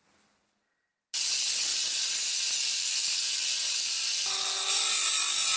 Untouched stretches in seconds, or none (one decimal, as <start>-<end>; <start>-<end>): 0.0-5.6